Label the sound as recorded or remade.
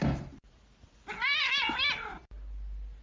recorded